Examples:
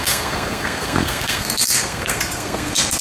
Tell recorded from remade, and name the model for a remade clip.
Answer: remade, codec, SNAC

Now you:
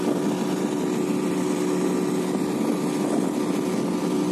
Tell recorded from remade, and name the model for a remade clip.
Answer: recorded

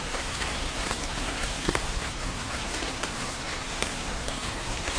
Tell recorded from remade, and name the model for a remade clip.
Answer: remade, codec, SNAC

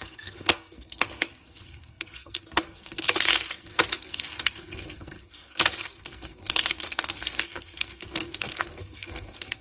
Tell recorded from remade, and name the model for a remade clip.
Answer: remade, codec, SNAC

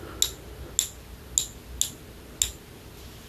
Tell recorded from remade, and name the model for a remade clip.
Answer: recorded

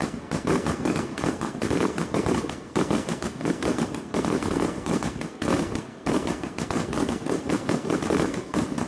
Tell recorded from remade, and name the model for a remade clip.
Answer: remade, codec, SNAC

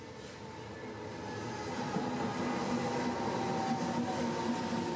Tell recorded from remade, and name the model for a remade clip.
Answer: recorded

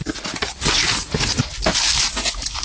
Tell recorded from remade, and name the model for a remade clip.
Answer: recorded